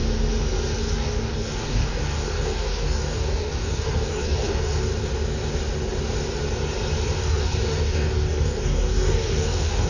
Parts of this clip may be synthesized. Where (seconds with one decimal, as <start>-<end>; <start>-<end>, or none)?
0.8-4.9; 7.2-9.9